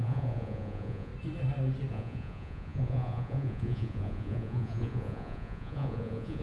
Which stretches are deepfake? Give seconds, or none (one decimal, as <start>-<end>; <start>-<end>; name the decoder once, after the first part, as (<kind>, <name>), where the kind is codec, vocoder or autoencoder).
0.0-1.1 (vocoder, Vocos); 1.9-6.4